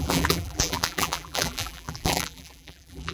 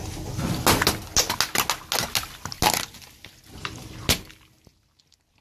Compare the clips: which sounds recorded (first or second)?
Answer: second